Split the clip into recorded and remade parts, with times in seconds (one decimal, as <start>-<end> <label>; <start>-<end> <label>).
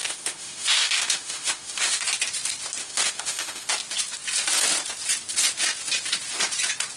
0.0-2.0 remade; 2.0-2.8 recorded; 2.8-3.7 remade; 3.7-7.0 recorded